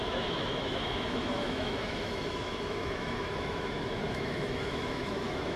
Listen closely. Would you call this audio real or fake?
fake